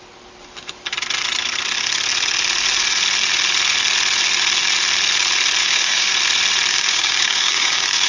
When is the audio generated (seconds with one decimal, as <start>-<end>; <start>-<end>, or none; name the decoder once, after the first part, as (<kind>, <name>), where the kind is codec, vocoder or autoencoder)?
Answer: 5.6-6.1 (codec, DAC); 6.7-8.1